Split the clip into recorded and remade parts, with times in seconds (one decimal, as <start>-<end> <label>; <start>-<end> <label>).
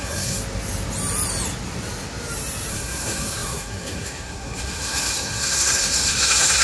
0.0-0.4 remade; 0.4-2.7 recorded; 2.7-6.6 remade